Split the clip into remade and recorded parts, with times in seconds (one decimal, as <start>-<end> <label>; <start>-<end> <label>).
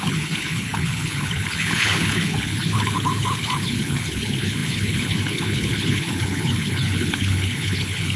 0.0-8.2 remade